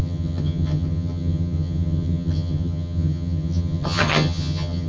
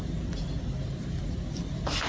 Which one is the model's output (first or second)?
first